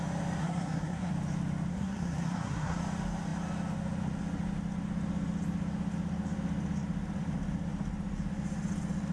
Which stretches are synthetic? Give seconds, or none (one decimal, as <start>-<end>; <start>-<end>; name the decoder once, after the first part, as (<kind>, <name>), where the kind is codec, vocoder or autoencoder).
0.4-1.1 (codec, SNAC); 1.7-2.8